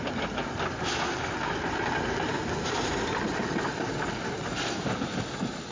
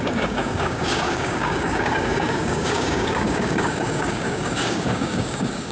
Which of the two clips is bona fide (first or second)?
first